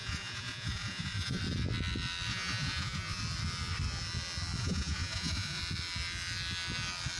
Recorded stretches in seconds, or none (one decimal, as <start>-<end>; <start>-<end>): 1.4-2.3; 3.2-4.6; 5.6-7.2